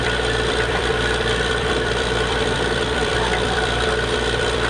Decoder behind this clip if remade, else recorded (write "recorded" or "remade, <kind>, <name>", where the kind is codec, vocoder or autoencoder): remade, vocoder, BigVGAN v2